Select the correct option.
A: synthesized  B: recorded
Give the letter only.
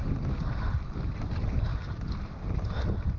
A